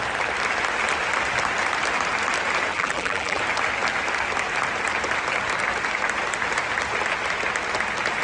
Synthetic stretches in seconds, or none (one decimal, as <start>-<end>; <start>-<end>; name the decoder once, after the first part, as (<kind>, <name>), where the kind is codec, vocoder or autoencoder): 2.7-3.4 (vocoder, BigVGAN v2)